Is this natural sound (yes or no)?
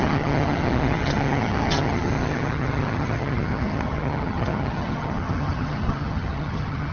no